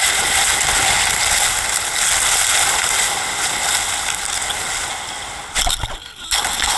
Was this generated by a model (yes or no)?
no